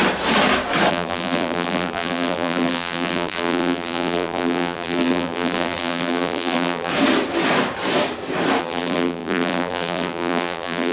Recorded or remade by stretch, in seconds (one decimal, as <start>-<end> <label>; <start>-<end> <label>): 0.0-0.9 recorded; 0.9-6.9 remade; 6.9-8.6 recorded; 8.6-10.9 remade